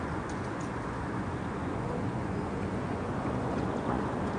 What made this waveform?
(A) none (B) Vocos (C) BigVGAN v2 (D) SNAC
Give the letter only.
B